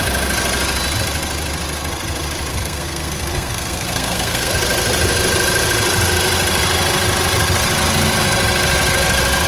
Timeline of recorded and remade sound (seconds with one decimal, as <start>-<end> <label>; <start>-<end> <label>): 0.0-2.5 recorded; 2.5-4.5 remade; 4.5-9.5 recorded